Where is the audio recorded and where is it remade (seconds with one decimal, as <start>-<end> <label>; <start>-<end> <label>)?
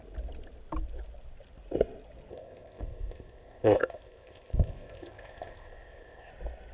0.0-2.3 recorded; 2.3-6.3 remade; 6.3-6.7 recorded